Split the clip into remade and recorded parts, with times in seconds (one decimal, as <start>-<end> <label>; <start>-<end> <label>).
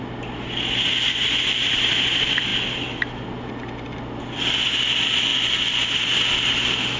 0.0-7.0 recorded